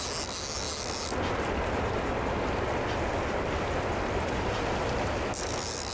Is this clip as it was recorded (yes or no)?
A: yes